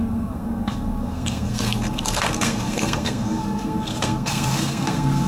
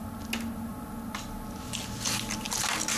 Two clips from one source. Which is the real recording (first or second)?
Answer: second